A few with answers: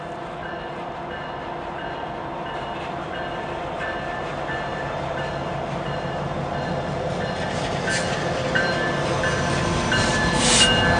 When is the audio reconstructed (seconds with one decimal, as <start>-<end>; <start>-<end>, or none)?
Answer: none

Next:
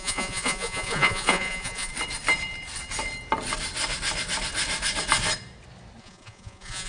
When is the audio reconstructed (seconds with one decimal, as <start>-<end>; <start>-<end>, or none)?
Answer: 0.0-1.9; 6.0-6.9

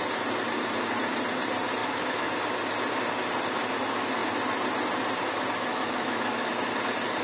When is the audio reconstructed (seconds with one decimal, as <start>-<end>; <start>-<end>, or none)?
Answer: 1.8-2.3; 5.7-6.5